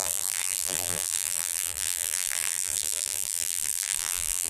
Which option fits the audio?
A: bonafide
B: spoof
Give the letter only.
B